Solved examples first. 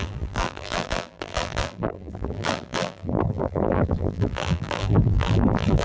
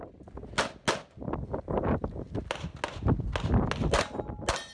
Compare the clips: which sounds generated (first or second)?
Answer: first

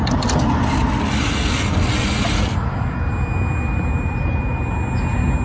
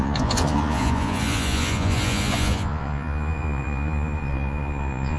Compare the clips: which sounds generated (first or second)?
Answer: second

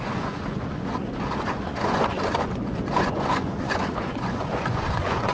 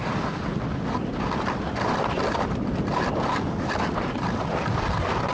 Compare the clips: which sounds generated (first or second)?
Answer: first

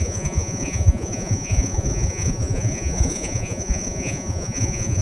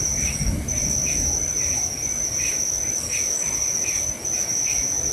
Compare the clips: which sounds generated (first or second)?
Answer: first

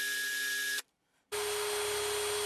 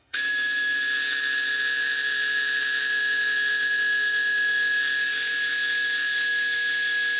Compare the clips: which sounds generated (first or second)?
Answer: second